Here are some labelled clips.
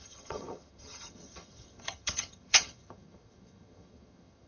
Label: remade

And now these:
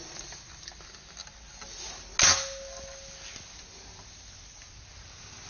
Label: recorded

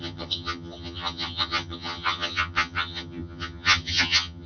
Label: remade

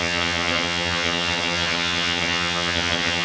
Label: remade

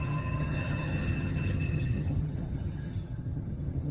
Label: remade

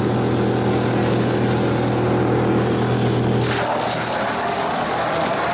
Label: recorded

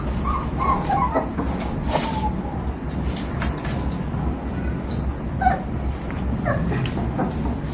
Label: recorded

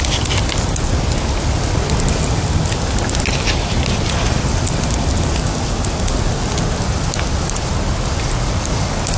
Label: recorded